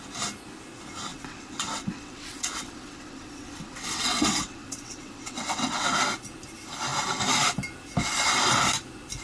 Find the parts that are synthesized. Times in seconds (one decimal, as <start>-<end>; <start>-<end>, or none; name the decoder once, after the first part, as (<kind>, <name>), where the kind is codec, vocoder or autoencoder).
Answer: 1.1-5.9 (vocoder, WaveNeXt)